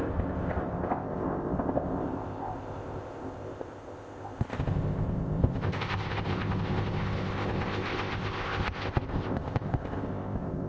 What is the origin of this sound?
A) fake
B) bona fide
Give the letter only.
A